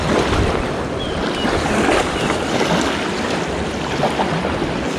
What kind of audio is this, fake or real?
real